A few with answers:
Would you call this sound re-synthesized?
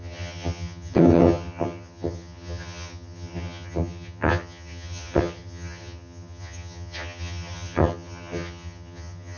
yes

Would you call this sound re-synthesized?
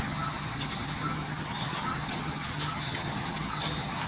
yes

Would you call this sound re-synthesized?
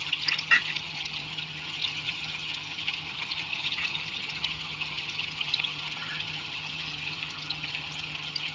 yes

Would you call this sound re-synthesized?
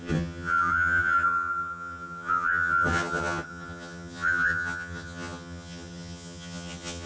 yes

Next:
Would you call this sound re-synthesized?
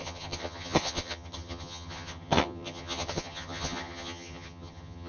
yes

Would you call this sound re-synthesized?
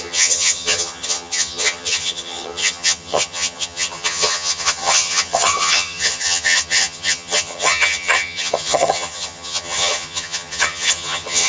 yes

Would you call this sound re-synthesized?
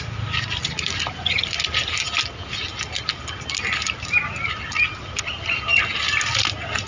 no